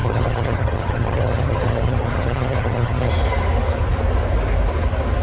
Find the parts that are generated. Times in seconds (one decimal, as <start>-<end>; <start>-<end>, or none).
0.0-3.1